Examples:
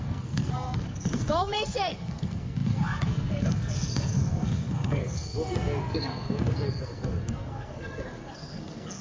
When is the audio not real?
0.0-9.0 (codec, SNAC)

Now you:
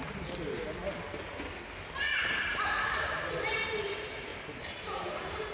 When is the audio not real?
2.1-3.3 (vocoder, BigVGAN v2); 4.3-5.5